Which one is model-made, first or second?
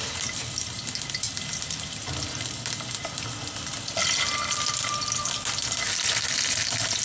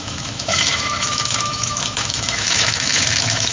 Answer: second